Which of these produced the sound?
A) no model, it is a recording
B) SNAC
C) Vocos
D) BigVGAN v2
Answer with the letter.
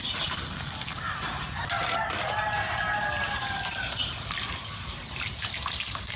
A